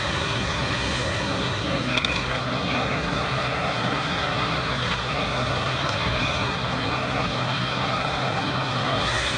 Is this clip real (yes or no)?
no